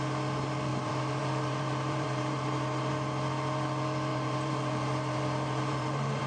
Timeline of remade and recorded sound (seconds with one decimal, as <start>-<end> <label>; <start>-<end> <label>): 0.0-0.7 recorded; 0.7-2.9 remade; 2.9-4.1 recorded; 4.1-6.3 remade